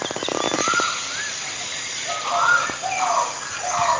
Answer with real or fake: real